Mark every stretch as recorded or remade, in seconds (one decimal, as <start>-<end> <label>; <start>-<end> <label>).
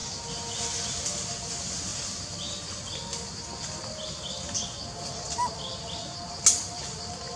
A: 0.0-7.4 recorded